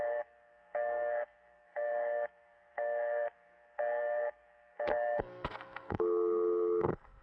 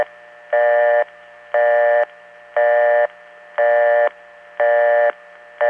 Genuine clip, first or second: second